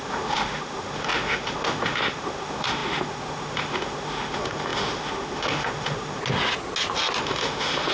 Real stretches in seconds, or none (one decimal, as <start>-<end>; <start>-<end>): 6.2-7.2